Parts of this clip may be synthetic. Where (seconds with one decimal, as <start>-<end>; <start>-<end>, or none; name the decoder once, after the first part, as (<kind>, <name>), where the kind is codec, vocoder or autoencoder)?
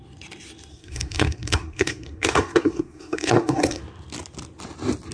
0.7-3.8 (codec, SNAC)